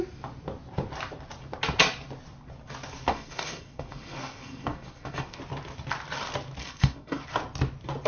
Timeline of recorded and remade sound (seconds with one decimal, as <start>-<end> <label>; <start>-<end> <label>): 0.0-3.1 recorded; 3.1-5.4 remade; 5.4-6.6 recorded; 6.6-7.2 remade; 7.2-8.1 recorded

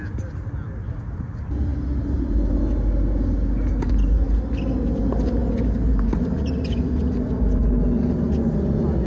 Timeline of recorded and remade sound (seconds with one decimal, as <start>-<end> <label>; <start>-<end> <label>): 0.0-9.1 recorded